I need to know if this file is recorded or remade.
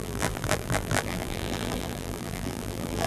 remade